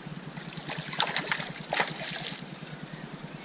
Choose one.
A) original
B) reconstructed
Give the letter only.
A